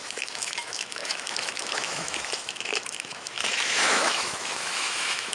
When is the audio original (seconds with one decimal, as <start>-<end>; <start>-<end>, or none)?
none